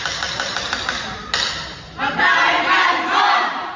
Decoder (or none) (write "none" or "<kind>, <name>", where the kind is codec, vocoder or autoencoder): none